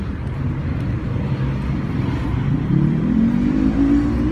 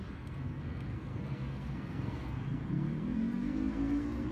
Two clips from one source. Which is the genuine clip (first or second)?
first